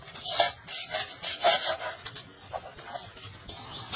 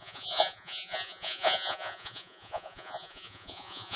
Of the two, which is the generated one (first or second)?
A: second